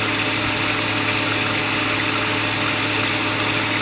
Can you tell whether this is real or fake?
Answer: real